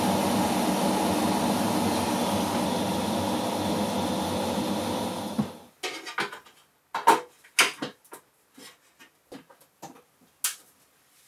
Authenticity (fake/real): real